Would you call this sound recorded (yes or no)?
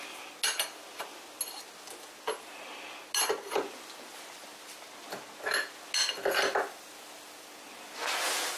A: yes